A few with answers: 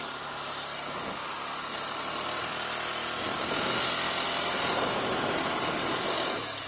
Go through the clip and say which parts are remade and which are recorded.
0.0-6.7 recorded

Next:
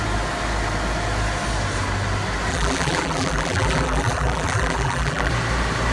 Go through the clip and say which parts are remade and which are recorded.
0.0-2.5 recorded; 2.5-5.3 remade; 5.3-5.9 recorded

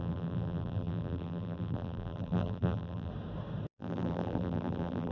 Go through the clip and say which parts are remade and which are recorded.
0.0-3.1 remade; 3.1-3.7 recorded; 3.7-5.1 remade